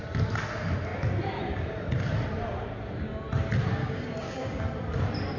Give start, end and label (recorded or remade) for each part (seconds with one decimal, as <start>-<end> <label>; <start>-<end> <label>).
0.0-3.8 recorded; 3.8-4.6 remade; 4.6-5.4 recorded